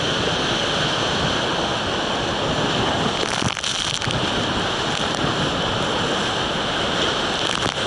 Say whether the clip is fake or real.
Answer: real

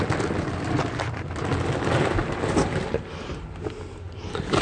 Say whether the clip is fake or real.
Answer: real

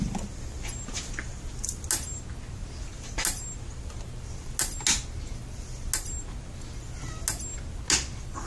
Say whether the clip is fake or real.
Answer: real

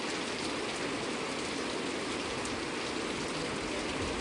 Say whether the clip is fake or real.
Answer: real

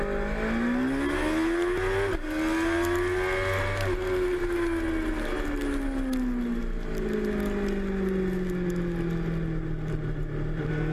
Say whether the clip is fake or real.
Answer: real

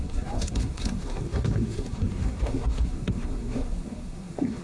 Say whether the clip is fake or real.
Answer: fake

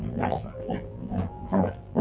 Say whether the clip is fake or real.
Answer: fake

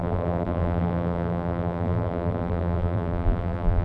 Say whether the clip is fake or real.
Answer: fake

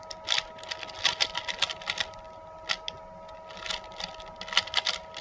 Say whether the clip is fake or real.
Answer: real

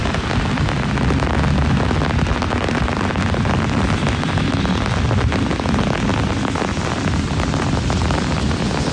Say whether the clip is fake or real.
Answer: real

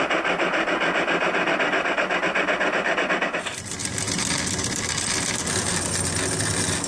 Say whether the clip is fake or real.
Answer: real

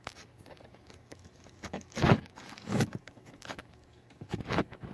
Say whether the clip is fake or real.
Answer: fake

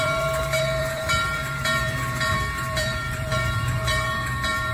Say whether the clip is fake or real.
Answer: fake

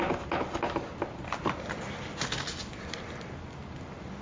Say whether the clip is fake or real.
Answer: real